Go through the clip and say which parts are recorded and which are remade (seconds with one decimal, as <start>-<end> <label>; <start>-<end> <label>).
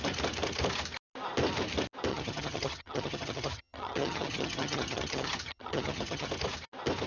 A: 0.0-2.1 recorded; 2.1-6.3 remade; 6.3-7.1 recorded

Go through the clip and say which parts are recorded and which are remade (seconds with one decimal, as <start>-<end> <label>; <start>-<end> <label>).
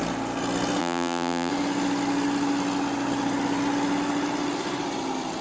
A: 0.0-0.8 recorded; 0.8-1.5 remade; 1.5-5.4 recorded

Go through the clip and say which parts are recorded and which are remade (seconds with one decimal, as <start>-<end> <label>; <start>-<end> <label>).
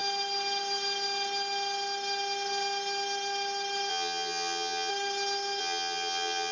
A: 0.0-3.9 recorded; 3.9-4.9 remade; 4.9-5.6 recorded; 5.6-6.5 remade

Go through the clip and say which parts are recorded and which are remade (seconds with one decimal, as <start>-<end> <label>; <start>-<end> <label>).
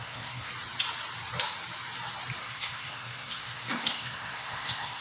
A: 0.0-0.5 remade; 0.5-2.4 recorded; 2.4-5.0 remade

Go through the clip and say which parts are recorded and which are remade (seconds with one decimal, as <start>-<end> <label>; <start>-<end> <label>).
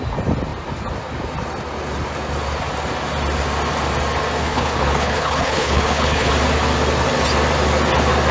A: 0.0-4.4 recorded; 4.4-6.3 remade; 6.3-8.3 recorded